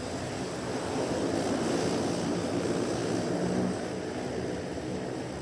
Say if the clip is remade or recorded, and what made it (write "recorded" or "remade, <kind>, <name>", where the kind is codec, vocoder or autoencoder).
recorded